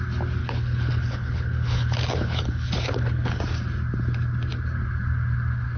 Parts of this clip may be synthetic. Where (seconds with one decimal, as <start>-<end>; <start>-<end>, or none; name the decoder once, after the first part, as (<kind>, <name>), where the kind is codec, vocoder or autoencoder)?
0.4-3.4 (codec, HILCodec)